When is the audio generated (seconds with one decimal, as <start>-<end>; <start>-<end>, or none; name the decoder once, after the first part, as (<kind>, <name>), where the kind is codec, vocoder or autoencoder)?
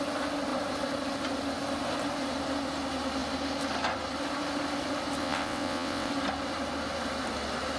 5.2-6.1 (vocoder, WaveNeXt)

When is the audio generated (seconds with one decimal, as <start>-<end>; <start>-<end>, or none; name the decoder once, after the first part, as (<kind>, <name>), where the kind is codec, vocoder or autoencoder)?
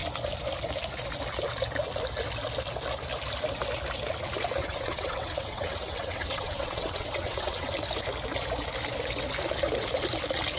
4.6-7.7 (vocoder, WaveNeXt)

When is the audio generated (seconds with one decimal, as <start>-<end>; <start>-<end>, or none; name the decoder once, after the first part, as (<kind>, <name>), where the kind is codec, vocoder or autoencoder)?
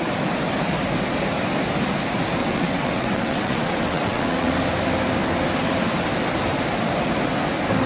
2.4-4.5 (vocoder, WaveNeXt)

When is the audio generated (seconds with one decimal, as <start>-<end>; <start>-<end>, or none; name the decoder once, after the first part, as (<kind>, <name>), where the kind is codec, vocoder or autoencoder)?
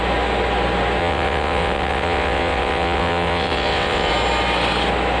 1.0-4.1 (vocoder, WaveNeXt)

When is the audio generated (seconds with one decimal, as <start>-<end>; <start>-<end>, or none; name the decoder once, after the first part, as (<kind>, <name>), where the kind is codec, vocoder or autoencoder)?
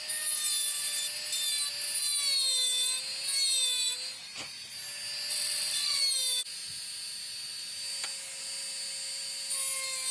5.3-6.0 (vocoder, WaveNeXt)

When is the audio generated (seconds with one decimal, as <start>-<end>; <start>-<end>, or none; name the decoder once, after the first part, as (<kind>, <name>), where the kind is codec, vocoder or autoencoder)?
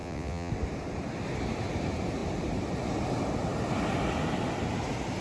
0.0-0.5 (vocoder, WaveNeXt)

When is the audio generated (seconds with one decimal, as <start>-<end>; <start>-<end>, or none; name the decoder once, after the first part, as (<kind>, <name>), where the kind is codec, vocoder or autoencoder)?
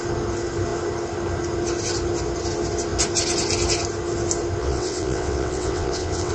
4.6-6.3 (vocoder, WaveNeXt)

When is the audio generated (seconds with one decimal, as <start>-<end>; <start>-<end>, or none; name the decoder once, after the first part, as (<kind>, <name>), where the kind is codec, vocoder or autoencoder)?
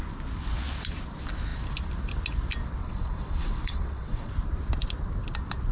2.8-4.3 (vocoder, WaveNeXt)